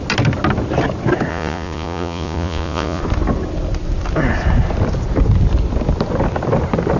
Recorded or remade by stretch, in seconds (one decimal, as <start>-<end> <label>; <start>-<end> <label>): 0.0-1.3 recorded; 1.3-3.0 remade; 3.0-7.0 recorded